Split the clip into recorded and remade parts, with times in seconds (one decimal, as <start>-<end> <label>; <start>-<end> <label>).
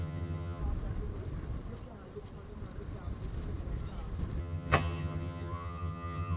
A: 0.0-0.6 remade; 0.6-4.4 recorded; 4.4-6.4 remade